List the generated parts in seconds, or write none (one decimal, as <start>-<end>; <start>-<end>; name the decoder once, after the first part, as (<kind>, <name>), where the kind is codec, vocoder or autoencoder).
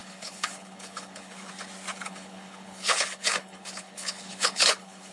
0.0-1.5 (codec, HILCodec); 1.9-5.1